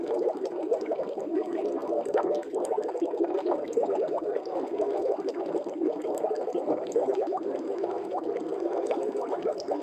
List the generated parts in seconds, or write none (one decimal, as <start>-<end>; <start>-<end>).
0.0-9.8